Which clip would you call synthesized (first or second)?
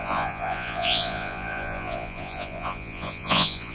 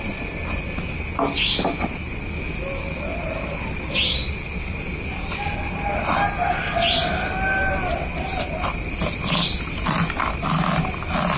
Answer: first